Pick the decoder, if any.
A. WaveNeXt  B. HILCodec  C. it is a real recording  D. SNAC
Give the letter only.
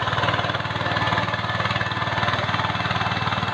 C